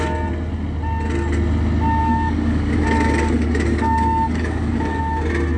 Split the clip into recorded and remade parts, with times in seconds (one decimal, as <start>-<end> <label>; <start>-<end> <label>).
0.0-2.0 recorded; 2.0-5.0 remade; 5.0-5.6 recorded